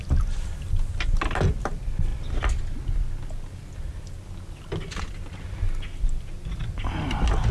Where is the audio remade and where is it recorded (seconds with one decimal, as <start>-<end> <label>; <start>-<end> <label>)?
0.0-7.5 recorded

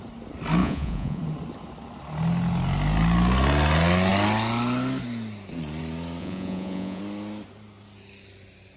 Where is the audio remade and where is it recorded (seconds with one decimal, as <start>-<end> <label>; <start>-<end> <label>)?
0.0-0.6 recorded; 0.6-1.2 remade; 1.2-6.2 recorded; 6.2-7.0 remade; 7.0-8.8 recorded